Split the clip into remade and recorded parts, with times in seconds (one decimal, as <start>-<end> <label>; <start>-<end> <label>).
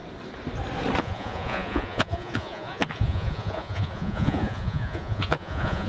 0.0-1.0 recorded; 1.0-5.9 remade